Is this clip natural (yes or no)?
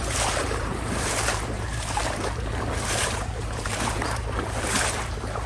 no